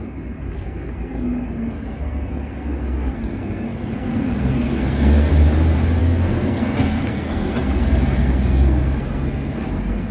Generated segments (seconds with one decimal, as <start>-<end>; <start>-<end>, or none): 0.0-5.3; 6.0-10.1